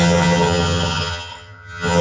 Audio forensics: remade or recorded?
remade